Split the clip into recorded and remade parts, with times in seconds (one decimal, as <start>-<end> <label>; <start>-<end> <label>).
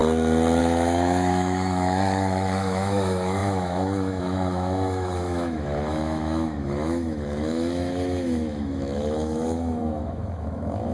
0.0-0.6 recorded; 0.6-10.9 remade